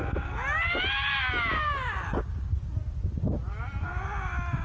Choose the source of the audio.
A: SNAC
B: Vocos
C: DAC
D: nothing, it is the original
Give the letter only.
D